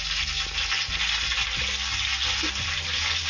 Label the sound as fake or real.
real